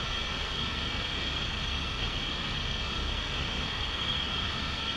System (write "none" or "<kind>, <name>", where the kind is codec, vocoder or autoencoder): codec, SNAC